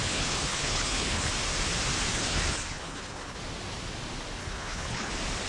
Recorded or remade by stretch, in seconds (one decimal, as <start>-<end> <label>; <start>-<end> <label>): 0.0-1.3 remade; 1.3-2.1 recorded; 2.1-3.4 remade; 3.4-4.4 recorded; 4.4-5.1 remade; 5.1-5.5 recorded